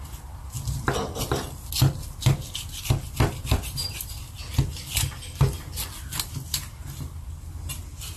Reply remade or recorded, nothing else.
recorded